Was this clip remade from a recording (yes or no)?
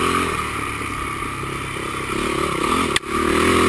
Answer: no